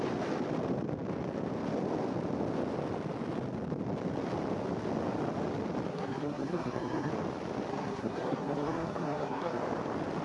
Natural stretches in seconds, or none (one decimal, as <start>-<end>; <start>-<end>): 0.0-5.9; 7.1-7.7; 9.6-10.2